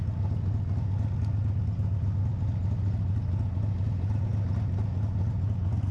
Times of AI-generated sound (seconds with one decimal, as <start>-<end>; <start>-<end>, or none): none